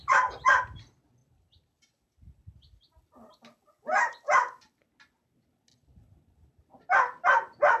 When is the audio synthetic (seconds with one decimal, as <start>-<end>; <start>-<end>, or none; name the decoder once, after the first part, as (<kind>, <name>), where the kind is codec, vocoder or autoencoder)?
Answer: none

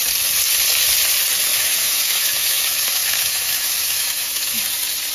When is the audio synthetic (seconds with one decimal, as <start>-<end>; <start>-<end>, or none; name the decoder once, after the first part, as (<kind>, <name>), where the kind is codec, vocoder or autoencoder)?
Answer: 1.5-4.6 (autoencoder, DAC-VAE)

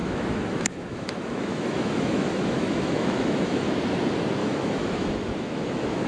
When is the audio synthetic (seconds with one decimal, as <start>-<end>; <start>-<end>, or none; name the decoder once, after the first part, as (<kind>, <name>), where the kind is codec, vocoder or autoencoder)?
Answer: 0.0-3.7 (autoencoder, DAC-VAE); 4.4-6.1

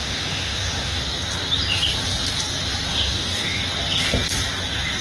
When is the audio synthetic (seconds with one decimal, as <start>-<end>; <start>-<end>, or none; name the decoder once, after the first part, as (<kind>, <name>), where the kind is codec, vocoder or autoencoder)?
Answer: 0.0-1.0 (autoencoder, DAC-VAE); 2.9-3.6